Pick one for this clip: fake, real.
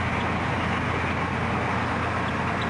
real